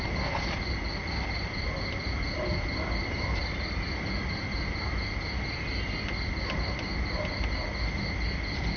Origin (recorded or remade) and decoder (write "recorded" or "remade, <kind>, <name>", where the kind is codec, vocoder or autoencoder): recorded